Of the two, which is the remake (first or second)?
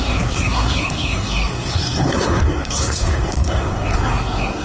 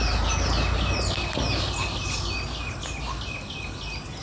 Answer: first